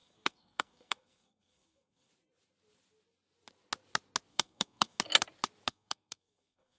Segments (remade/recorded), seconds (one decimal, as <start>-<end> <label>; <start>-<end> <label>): 0.0-2.1 remade; 2.1-4.3 recorded; 4.3-5.0 remade; 5.0-5.7 recorded; 5.7-6.8 remade